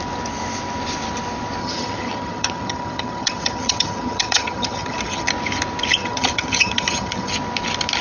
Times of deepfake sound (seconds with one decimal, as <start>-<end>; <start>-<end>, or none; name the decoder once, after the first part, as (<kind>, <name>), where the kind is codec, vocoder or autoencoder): 1.6-5.3 (vocoder, HiFi-GAN); 6.0-7.3